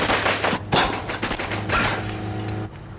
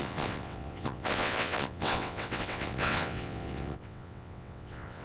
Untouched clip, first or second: first